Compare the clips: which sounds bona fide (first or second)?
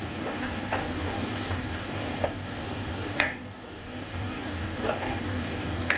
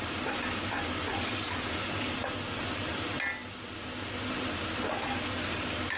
second